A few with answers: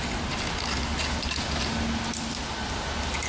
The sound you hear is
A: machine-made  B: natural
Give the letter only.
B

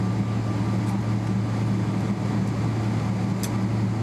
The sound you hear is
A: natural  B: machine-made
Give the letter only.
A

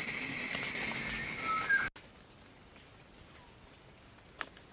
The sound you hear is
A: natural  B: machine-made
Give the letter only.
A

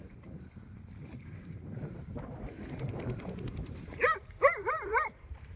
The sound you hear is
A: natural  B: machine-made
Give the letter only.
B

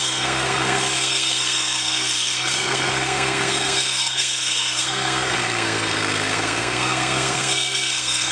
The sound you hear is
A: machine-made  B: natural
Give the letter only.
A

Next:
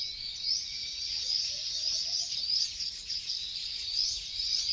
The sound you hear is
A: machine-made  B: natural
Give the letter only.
A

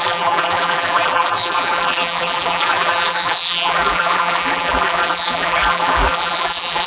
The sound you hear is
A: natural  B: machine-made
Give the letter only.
B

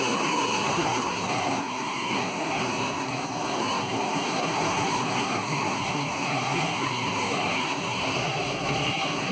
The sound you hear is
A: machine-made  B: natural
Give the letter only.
A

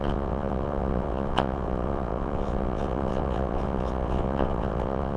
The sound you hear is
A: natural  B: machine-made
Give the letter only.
B